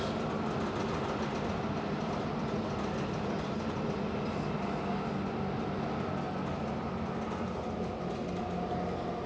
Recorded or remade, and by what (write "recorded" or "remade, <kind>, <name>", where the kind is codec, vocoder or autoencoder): recorded